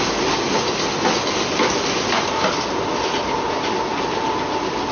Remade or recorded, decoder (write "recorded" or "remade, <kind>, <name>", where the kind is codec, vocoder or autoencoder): recorded